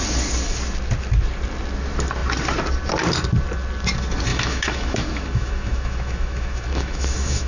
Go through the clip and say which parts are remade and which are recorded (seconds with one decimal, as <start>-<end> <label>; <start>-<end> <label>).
0.0-4.3 recorded; 4.3-7.5 remade